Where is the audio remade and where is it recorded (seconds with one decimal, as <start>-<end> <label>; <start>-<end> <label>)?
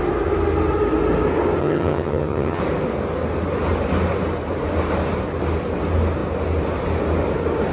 0.0-1.6 recorded; 1.6-2.6 remade; 2.6-7.7 recorded